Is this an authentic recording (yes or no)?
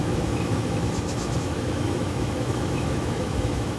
no